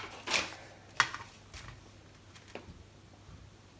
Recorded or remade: recorded